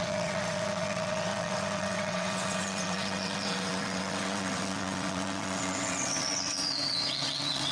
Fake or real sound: fake